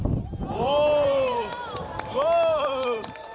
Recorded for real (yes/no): no